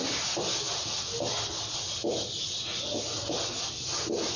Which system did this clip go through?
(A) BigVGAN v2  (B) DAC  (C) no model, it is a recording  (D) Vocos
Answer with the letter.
C